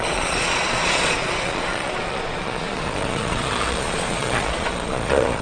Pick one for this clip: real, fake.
fake